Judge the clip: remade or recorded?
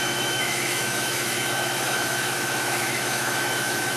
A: remade